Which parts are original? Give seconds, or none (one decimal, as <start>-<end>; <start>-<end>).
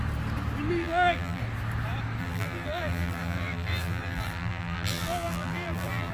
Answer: 0.0-0.8; 1.4-2.2